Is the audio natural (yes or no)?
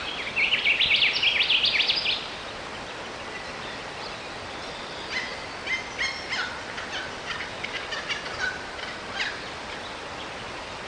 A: yes